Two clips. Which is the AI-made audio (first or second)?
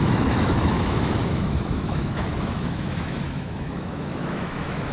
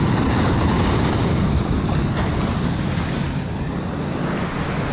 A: first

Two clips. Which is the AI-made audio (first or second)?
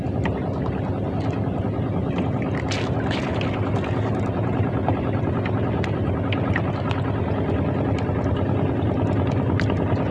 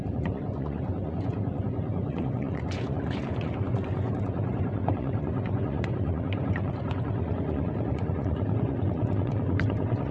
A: second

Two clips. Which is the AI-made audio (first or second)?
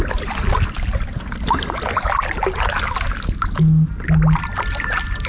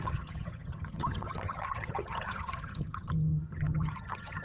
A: second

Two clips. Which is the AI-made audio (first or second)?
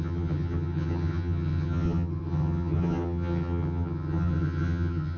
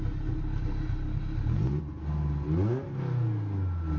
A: first